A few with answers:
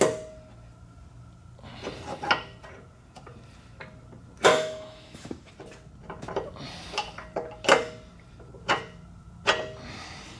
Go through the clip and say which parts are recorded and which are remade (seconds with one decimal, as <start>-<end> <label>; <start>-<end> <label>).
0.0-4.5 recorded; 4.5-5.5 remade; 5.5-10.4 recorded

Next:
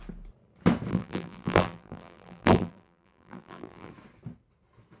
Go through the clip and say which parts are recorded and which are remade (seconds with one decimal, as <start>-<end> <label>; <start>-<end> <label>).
0.0-0.9 recorded; 0.9-3.9 remade; 3.9-5.0 recorded

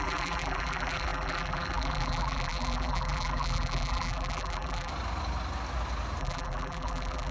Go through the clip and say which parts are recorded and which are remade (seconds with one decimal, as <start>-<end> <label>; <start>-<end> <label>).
0.0-4.9 remade; 4.9-6.2 recorded; 6.2-7.3 remade

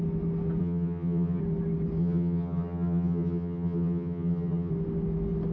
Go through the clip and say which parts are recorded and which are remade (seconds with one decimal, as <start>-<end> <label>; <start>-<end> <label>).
0.0-0.6 recorded; 0.6-1.4 remade; 1.4-2.0 recorded; 2.0-4.7 remade; 4.7-5.5 recorded

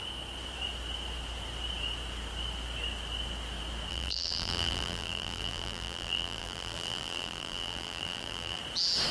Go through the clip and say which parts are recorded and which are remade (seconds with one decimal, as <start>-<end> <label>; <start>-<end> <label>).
0.0-3.9 recorded; 3.9-8.6 remade; 8.6-9.1 recorded

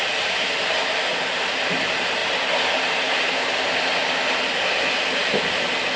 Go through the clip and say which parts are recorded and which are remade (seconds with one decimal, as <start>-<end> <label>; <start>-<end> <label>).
0.0-6.0 recorded

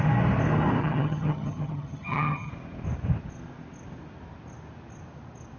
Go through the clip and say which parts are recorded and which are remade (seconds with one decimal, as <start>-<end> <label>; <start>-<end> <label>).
0.0-0.8 recorded; 0.8-2.5 remade; 2.5-5.6 recorded

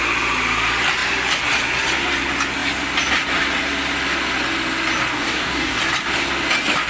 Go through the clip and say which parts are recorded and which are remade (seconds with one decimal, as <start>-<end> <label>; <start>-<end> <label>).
0.0-5.1 recorded; 5.1-5.8 remade; 5.8-6.9 recorded